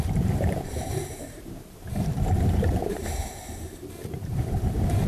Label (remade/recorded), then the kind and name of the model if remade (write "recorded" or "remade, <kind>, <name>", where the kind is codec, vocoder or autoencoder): remade, vocoder, BigVGAN v2